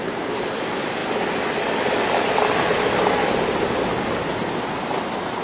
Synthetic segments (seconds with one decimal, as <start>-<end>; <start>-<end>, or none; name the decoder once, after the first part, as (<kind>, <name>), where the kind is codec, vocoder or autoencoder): none